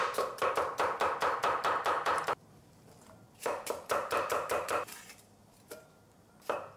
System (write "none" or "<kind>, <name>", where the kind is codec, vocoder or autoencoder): vocoder, BigVGAN v2